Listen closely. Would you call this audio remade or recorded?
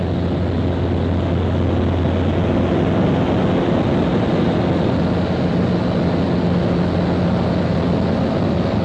recorded